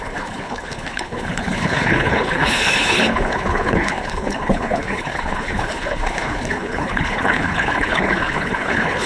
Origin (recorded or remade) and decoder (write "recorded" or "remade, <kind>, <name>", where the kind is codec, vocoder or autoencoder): remade, codec, HILCodec